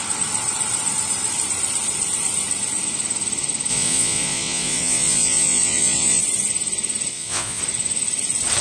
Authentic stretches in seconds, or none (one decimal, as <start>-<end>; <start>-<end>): 0.0-3.7; 6.2-7.1; 7.6-8.6